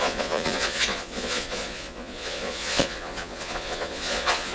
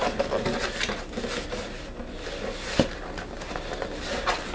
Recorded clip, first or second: second